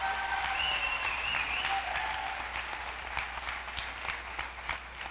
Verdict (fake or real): real